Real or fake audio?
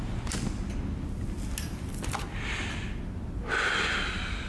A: real